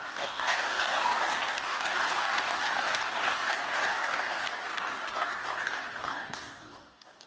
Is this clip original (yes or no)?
no